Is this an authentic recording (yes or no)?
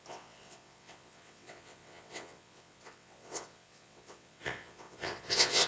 no